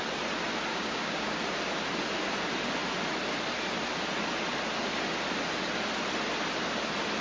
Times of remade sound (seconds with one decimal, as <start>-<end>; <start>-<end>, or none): 0.7-1.4